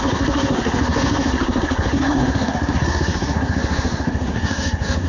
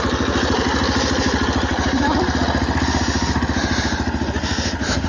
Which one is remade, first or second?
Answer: first